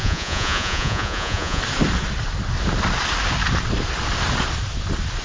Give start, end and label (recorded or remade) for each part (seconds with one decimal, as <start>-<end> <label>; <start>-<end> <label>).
0.0-1.6 remade; 1.6-5.2 recorded